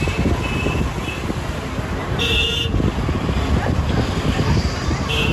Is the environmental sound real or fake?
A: real